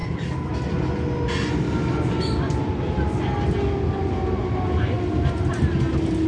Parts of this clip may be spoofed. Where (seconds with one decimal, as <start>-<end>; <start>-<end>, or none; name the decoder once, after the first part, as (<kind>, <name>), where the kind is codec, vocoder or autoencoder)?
none

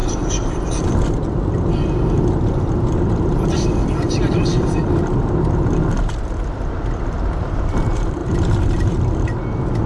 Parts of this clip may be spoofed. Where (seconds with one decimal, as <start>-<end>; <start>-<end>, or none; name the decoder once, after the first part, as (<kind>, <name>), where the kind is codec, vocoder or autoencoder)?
0.0-9.9 (vocoder, BigVGAN v2)

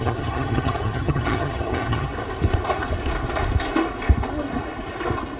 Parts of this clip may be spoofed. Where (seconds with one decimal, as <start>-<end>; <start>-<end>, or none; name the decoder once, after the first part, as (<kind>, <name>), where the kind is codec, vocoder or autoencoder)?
0.0-2.1 (vocoder, HiFi-GAN)

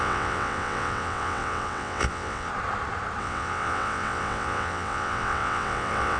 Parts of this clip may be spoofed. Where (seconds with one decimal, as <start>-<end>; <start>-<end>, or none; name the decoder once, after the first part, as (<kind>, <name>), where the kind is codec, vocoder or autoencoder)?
0.0-2.5 (vocoder, WaveNeXt); 3.2-6.2

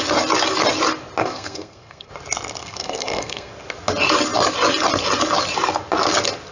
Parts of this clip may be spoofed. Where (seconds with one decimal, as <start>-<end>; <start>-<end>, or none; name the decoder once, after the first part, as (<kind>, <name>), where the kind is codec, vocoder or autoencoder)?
1.2-2.1 (codec, SNAC); 2.6-3.5